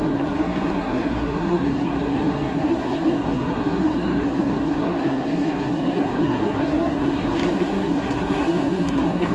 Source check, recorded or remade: remade